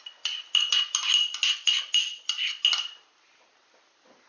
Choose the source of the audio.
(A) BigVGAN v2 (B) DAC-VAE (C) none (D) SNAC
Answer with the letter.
C